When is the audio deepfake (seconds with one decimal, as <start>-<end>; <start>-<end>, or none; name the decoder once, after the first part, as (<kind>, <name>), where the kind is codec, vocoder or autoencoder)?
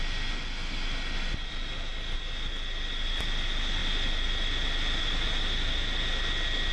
none